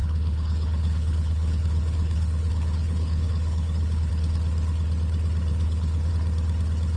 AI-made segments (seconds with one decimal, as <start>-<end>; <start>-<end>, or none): 0.0-4.1; 5.5-6.1